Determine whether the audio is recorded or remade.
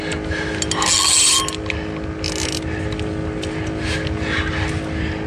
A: recorded